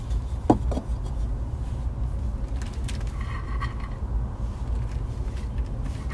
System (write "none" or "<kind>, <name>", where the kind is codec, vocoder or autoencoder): none